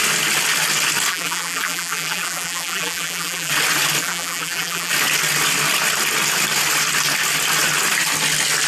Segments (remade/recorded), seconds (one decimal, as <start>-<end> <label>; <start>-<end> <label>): 0.0-1.1 recorded; 1.1-3.5 remade; 3.5-4.0 recorded; 4.0-4.9 remade; 4.9-8.7 recorded